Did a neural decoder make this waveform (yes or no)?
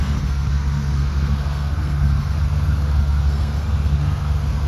yes